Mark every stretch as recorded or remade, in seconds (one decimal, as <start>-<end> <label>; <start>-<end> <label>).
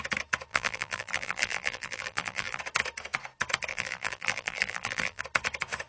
0.0-0.5 recorded; 0.5-2.6 remade; 2.6-3.7 recorded; 3.7-5.2 remade; 5.2-5.9 recorded